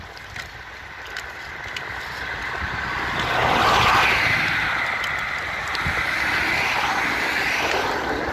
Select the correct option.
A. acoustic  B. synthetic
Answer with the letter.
A